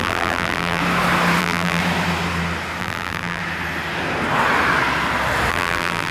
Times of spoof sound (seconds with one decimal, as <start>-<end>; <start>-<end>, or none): 0.0-0.8; 1.4-1.8; 2.8-3.4; 5.5-6.1